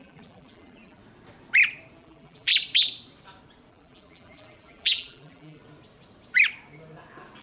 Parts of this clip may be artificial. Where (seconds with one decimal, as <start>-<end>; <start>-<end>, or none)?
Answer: 0.0-1.0; 2.0-2.5; 3.7-5.6